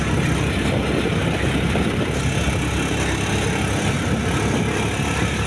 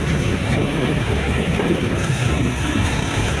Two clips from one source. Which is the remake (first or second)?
second